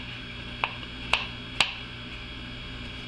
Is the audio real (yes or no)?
yes